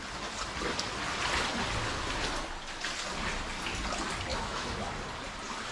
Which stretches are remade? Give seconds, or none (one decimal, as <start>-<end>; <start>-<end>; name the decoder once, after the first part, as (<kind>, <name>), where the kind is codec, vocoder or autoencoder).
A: 4.3-4.9 (autoencoder, DAC-VAE)